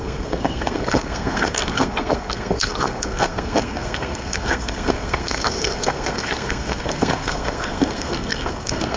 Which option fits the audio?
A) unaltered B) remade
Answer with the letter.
B